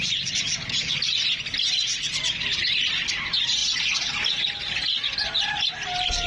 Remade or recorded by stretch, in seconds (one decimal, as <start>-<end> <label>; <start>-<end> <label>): 0.0-6.3 recorded